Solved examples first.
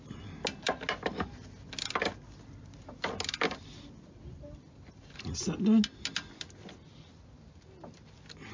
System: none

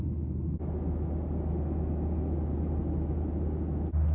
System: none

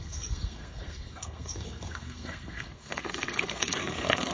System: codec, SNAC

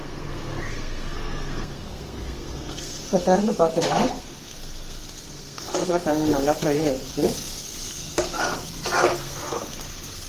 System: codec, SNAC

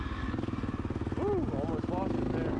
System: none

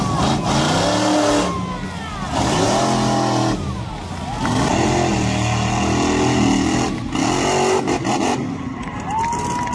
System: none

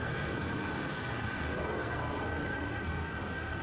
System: codec, SNAC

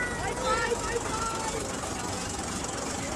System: none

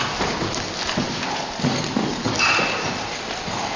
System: none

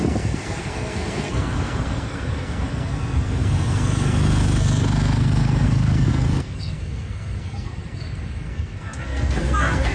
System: codec, SNAC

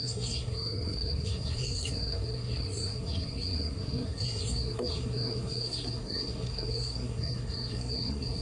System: codec, SNAC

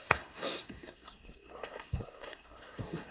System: codec, SNAC